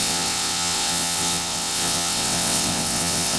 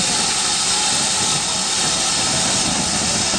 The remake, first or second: first